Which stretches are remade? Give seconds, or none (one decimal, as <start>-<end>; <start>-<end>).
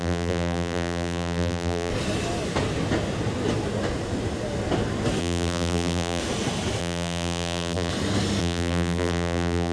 0.0-1.9; 5.2-6.2; 6.8-7.9; 8.4-9.7